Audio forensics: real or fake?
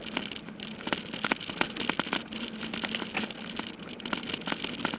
real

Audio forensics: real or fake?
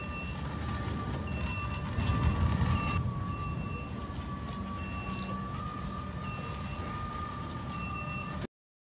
real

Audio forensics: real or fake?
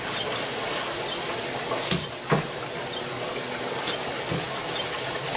real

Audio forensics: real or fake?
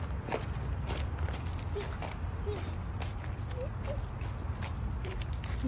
real